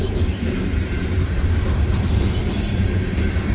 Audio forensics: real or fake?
fake